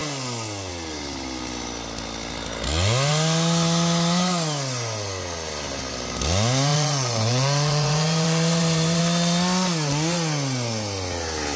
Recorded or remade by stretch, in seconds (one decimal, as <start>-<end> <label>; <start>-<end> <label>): 0.0-6.7 recorded; 6.7-9.0 remade; 9.0-11.6 recorded